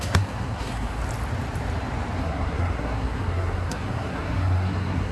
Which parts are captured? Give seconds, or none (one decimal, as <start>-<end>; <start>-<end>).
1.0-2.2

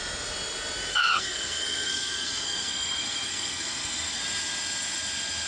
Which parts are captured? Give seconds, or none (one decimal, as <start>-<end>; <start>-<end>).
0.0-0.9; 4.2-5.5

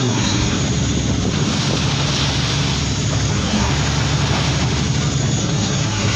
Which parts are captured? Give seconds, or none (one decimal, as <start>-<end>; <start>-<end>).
0.6-3.3; 3.7-5.4

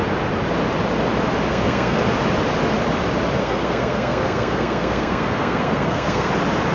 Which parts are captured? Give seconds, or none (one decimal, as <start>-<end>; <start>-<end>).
0.0-1.5; 2.0-3.4; 6.3-6.7

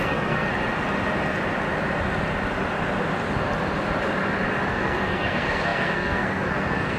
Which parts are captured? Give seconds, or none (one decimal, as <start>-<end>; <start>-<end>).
0.5-4.7

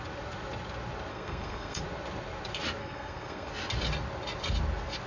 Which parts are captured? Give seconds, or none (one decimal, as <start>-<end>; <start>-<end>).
0.0-1.1; 1.8-2.8; 3.5-5.1

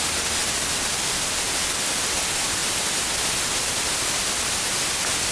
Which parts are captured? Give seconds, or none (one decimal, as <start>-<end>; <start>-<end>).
0.0-5.3